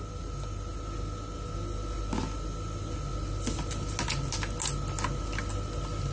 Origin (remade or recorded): recorded